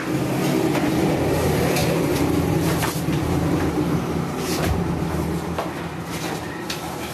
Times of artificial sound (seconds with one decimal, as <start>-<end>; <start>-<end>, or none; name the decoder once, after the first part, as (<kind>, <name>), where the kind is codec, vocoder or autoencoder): 1.8-4.9 (vocoder, BigVGAN v2)